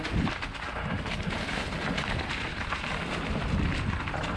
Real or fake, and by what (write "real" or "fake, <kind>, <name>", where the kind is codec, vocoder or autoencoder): real